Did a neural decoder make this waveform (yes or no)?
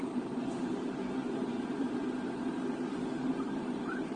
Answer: yes